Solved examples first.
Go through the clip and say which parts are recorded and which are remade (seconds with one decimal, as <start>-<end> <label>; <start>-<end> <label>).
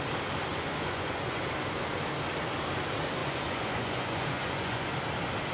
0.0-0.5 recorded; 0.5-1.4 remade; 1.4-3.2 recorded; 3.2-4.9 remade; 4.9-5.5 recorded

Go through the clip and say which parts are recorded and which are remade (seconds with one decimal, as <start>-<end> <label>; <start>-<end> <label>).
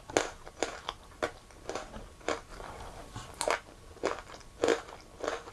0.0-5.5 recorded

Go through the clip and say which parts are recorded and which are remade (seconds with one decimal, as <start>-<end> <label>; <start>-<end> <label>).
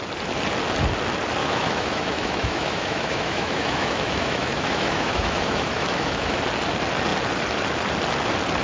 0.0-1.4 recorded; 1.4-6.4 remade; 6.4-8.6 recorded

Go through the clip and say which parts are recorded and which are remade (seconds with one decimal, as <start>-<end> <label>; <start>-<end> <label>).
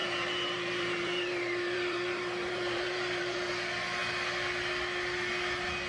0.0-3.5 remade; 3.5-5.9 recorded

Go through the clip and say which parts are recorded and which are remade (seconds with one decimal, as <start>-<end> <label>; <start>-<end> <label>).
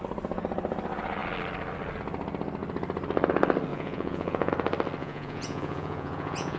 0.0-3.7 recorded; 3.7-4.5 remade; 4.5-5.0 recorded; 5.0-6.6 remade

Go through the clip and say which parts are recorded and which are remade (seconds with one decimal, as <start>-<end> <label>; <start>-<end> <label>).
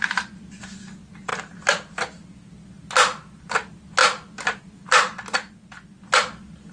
0.0-6.7 recorded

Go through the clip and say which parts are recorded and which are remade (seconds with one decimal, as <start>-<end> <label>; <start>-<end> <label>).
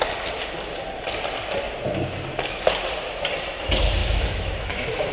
0.0-4.0 recorded; 4.0-5.1 remade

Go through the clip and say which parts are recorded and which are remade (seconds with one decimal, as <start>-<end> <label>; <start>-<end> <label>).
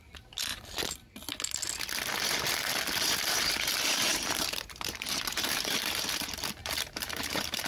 0.0-4.1 recorded; 4.1-5.7 remade; 5.7-6.6 recorded; 6.6-7.7 remade